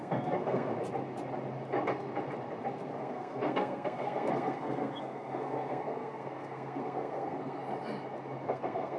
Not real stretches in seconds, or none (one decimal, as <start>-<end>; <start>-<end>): 0.0-0.7; 3.0-7.6; 8.4-9.0